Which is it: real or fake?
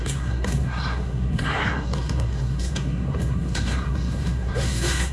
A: fake